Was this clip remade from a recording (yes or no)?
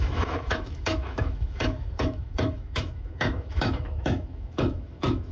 yes